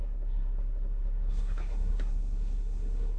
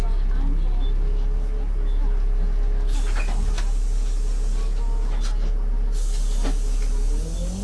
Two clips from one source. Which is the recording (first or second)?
second